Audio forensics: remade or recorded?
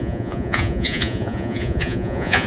remade